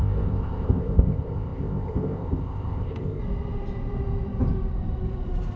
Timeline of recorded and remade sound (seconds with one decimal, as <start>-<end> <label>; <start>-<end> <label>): 0.0-3.2 remade; 3.2-5.6 recorded